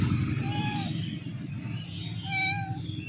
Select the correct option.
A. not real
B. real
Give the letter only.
B